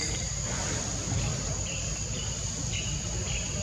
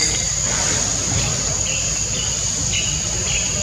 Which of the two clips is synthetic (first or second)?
first